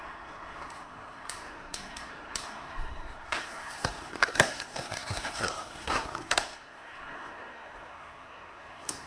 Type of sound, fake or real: fake